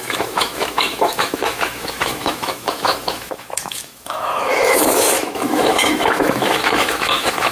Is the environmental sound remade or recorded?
remade